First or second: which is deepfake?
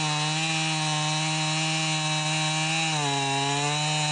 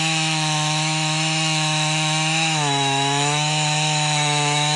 second